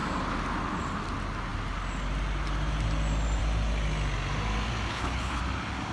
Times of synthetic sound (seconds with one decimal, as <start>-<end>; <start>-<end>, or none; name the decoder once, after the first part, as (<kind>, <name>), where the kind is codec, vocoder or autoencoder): 4.9-5.4 (codec, HILCodec)

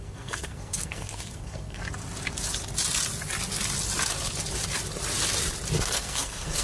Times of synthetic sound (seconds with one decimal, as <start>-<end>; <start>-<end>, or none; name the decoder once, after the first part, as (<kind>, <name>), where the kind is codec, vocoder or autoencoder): 0.0-1.8 (codec, SNAC); 5.8-6.6